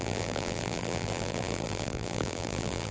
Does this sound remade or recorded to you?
remade